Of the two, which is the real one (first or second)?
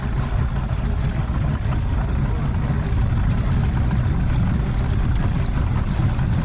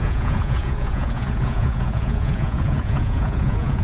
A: first